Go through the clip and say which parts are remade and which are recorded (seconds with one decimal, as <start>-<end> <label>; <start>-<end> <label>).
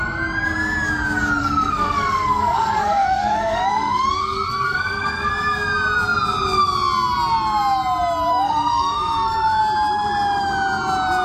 0.0-1.4 recorded; 1.4-5.3 remade; 5.3-8.3 recorded; 8.3-9.6 remade; 9.6-11.2 recorded